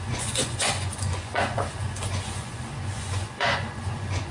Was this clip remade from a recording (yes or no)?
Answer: yes